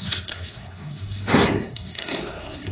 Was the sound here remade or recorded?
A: remade